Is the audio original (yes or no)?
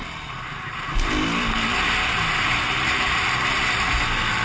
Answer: yes